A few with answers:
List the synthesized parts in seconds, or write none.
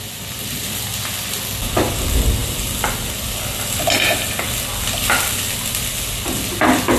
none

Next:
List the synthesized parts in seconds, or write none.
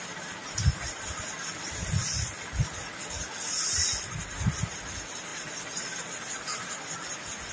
none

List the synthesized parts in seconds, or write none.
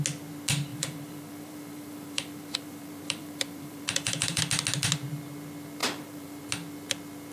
0.7-4.4 (vocoder, BigVGAN v2); 5.8-6.4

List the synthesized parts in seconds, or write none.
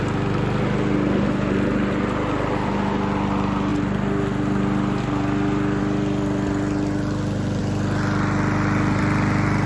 none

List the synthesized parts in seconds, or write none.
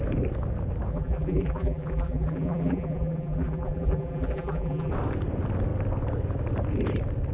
0.9-4.9 (vocoder, BigVGAN v2)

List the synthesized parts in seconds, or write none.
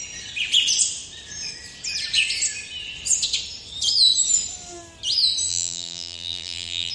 5.5-6.9 (vocoder, BigVGAN v2)